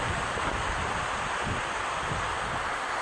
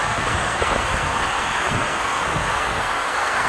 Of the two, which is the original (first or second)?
first